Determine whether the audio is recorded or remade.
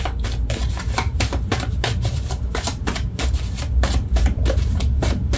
remade